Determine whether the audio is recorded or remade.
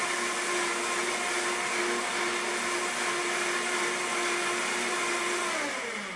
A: recorded